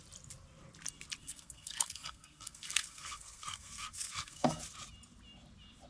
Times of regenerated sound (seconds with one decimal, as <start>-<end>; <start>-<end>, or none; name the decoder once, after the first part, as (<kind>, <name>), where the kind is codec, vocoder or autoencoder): 1.2-4.6 (codec, SNAC)